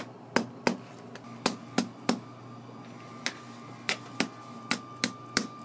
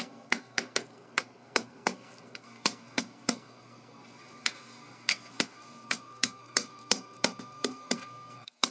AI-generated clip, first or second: second